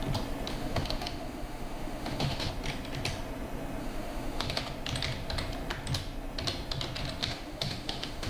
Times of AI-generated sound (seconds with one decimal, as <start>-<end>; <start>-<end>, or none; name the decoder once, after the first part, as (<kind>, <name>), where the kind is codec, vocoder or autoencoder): 0.5-2.5 (autoencoder, DAC-VAE); 3.8-4.6; 7.2-8.3